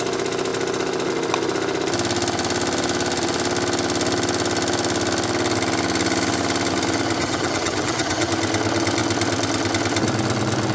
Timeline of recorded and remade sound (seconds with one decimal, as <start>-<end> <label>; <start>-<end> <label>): 0.0-7.2 recorded; 7.2-8.3 remade; 8.3-10.7 recorded